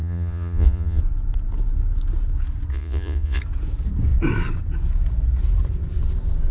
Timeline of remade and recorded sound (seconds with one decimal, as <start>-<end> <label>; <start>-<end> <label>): 0.0-1.0 remade; 1.0-2.7 recorded; 2.7-3.4 remade; 3.4-6.5 recorded